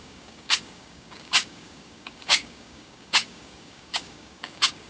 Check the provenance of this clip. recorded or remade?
remade